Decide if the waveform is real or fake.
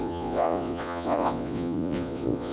fake